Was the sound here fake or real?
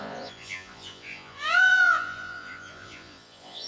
fake